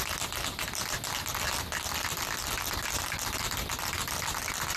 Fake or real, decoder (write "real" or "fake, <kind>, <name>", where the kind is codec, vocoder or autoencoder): real